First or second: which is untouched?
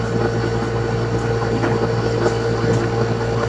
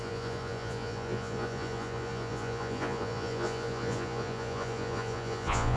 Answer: first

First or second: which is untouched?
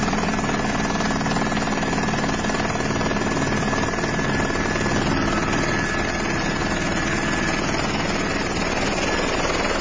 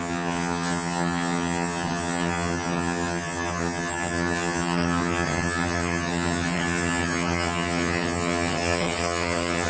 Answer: first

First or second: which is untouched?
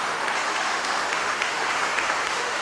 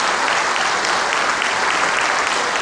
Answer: second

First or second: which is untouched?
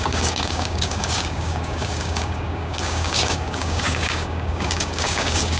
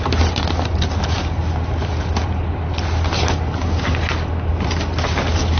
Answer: second